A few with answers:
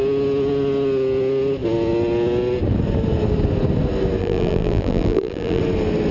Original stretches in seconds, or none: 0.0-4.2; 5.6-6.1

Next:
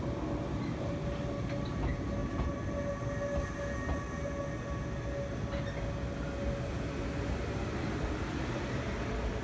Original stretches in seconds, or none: 0.0-9.4

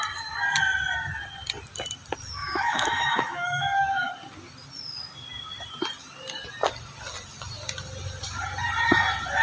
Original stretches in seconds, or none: 0.0-2.4; 4.1-9.4

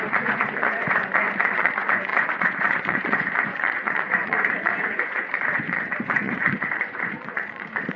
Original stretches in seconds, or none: none

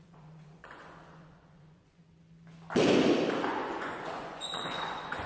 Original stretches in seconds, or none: 2.0-3.4

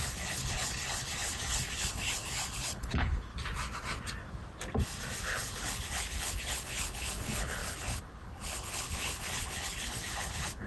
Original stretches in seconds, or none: 3.3-5.2

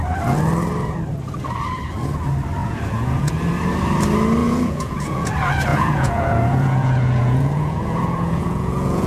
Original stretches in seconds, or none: 0.0-2.6; 3.3-4.4; 5.3-5.7